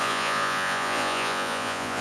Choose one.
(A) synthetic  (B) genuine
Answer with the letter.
A